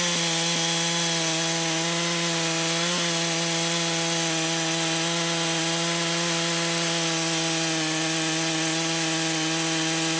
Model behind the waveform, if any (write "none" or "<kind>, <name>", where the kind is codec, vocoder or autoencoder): none